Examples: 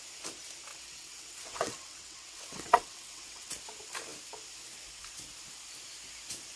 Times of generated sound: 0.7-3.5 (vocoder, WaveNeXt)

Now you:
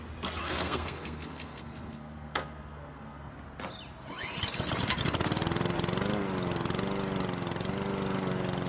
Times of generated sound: 0.4-3.3 (codec, SNAC)

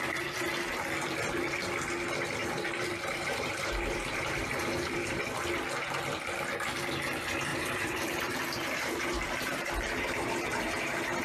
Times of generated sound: 2.4-5.2 (vocoder, BigVGAN v2); 7.5-10.3

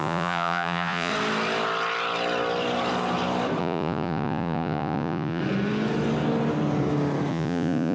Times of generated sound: 0.0-1.1 (vocoder, Vocos); 3.6-5.4; 7.3-7.9